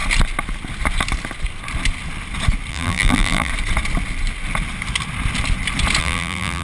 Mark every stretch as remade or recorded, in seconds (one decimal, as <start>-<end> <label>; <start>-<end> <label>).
0.0-2.7 recorded; 2.7-3.5 remade; 3.5-6.0 recorded; 6.0-6.6 remade